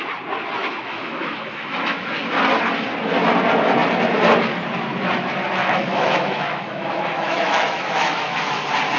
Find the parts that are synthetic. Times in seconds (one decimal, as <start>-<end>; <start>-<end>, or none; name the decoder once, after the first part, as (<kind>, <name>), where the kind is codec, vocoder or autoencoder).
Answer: 0.6-2.1 (autoencoder, DAC-VAE); 5.6-8.6